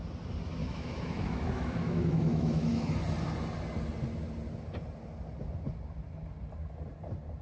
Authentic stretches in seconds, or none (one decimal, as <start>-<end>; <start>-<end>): 0.0-0.6; 2.9-7.4